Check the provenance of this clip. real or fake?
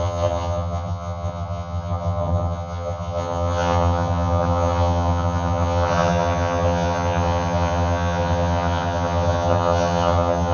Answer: fake